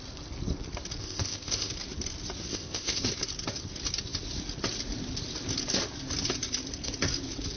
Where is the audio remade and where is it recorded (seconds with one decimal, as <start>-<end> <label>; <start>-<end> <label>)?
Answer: 0.0-1.0 recorded; 1.0-1.7 remade; 1.7-2.5 recorded; 2.5-3.1 remade; 3.1-7.6 recorded